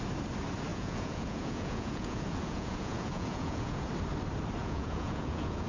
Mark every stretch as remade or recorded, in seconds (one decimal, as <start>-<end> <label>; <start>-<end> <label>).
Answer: 0.0-0.7 recorded; 0.7-3.9 remade; 3.9-4.6 recorded; 4.6-5.7 remade